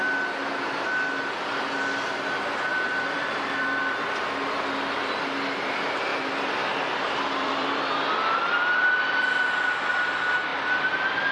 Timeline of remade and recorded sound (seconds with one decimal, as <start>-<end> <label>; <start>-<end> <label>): 0.0-2.7 recorded; 2.7-4.1 remade; 4.1-6.1 recorded; 6.1-8.8 remade; 8.8-10.5 recorded; 10.5-11.3 remade